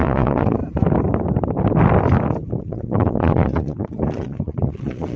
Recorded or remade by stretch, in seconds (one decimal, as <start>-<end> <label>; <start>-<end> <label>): 0.0-0.6 remade; 0.6-2.6 recorded; 2.6-5.2 remade